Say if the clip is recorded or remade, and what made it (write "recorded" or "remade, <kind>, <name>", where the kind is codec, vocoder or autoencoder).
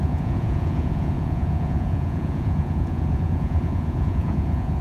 remade, vocoder, Vocos